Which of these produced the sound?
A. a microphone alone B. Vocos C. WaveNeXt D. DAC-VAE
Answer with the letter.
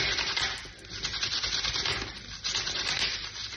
A